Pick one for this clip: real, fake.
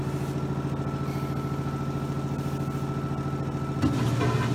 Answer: real